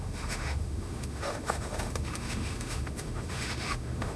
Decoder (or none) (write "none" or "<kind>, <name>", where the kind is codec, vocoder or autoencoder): autoencoder, DAC-VAE